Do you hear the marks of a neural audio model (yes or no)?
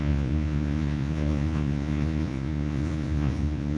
yes